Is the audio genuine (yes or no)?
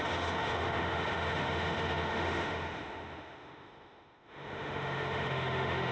no